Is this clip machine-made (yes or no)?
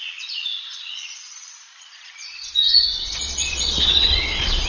yes